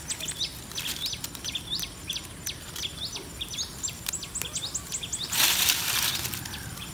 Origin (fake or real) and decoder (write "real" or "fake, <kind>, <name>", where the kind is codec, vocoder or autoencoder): real